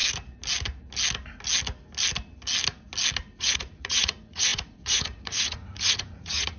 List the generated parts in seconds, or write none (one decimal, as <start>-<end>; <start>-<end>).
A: 3.4-6.6